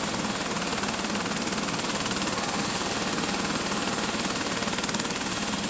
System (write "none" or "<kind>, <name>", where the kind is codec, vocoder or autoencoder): none